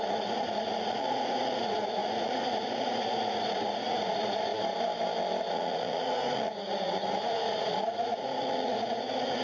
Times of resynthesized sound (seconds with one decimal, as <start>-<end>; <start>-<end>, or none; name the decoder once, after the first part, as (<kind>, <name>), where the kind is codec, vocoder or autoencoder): 0.0-4.5 (vocoder, Vocos); 5.4-9.4